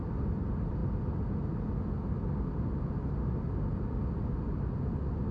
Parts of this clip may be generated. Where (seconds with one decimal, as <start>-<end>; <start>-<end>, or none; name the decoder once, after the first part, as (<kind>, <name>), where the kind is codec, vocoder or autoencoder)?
none